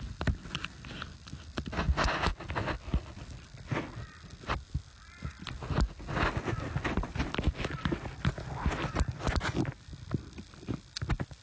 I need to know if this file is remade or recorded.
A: recorded